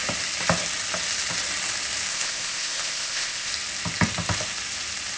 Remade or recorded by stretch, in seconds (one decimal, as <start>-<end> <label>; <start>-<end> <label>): 0.0-2.1 recorded; 2.1-3.5 remade; 3.5-5.2 recorded